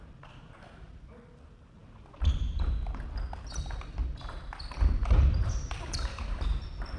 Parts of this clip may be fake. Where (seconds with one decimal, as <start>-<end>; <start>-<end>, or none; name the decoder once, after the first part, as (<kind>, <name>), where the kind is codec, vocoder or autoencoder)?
4.0-6.1 (vocoder, BigVGAN v2)